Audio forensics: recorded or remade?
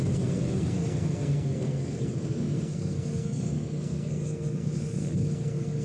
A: remade